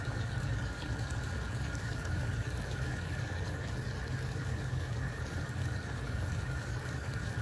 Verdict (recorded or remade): remade